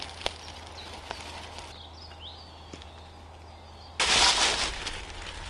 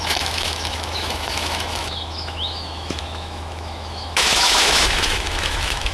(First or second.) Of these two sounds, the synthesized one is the second